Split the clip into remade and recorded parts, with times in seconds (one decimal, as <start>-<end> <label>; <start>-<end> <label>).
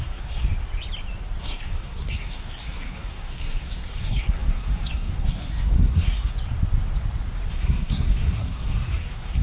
0.0-0.5 remade; 0.5-1.4 recorded; 1.4-6.3 remade; 6.3-7.5 recorded; 7.5-9.4 remade